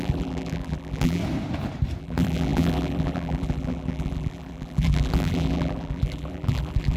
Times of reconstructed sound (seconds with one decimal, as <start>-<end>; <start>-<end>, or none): 0.0-1.2; 2.0-7.0